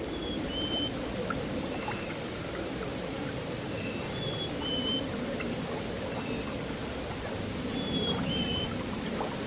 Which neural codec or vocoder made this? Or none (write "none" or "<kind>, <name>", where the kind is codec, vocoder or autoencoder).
none